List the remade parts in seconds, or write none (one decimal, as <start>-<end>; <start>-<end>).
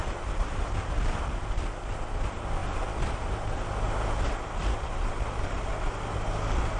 none